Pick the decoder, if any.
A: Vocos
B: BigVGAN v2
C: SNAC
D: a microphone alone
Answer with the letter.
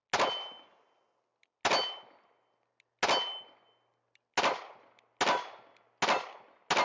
D